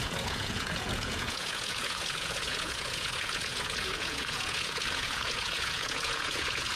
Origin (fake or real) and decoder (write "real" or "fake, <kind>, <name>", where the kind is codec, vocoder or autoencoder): fake, vocoder, Vocos